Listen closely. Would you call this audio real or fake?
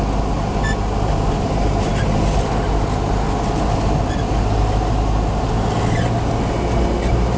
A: real